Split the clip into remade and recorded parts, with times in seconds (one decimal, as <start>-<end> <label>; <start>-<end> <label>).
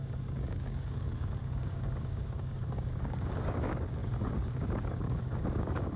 0.0-6.0 remade